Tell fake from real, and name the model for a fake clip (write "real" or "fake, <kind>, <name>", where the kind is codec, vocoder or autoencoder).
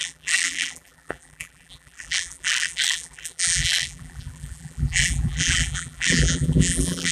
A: fake, vocoder, BigVGAN v2